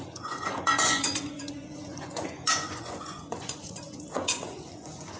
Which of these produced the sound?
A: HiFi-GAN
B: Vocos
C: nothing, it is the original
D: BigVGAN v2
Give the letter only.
B